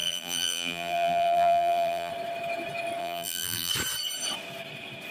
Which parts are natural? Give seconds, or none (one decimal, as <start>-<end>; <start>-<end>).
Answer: 2.1-3.0; 3.7-5.1